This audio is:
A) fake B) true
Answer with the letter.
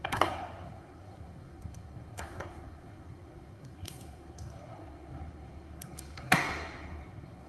A